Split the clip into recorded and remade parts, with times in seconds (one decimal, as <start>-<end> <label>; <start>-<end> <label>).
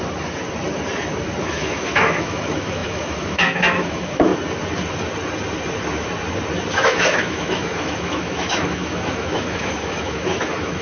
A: 0.0-1.4 recorded; 1.4-4.3 remade; 4.3-6.7 recorded; 6.7-10.8 remade